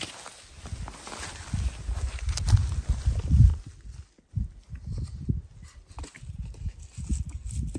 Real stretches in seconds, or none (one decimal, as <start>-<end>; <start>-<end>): 0.0-7.8

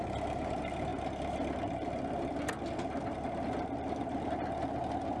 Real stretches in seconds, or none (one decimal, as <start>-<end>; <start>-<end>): 0.0-5.2

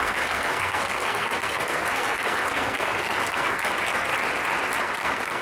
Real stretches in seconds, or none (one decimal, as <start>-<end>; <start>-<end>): 4.1-4.8

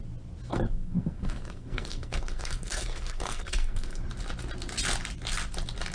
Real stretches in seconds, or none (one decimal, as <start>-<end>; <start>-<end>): 0.0-0.5; 4.0-5.9

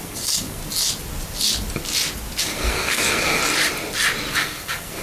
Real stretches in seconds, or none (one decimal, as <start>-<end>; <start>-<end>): 0.6-2.4; 3.4-4.3

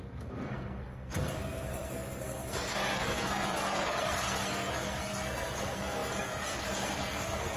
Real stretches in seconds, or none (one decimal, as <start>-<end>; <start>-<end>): none